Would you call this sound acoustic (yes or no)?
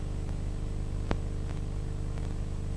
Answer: yes